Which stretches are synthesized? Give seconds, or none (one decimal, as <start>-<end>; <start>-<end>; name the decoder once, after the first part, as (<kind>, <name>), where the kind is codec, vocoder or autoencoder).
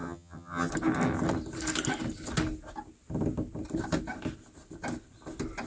0.0-0.7 (vocoder, HiFi-GAN)